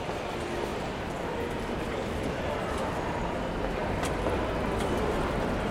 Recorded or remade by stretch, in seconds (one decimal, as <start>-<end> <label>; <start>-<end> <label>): 0.0-0.7 recorded; 0.7-2.3 remade; 2.3-5.7 recorded